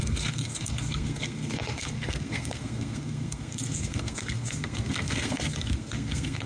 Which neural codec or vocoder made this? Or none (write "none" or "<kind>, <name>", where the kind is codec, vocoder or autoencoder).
codec, SNAC